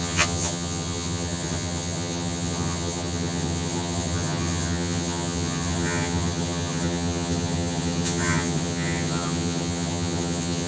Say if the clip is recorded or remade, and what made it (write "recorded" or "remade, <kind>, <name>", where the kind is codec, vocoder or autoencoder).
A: remade, vocoder, HiFi-GAN